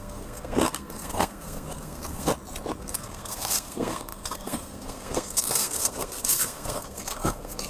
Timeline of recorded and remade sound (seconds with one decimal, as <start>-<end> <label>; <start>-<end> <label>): 0.0-2.3 remade; 2.3-2.8 recorded; 2.8-7.7 remade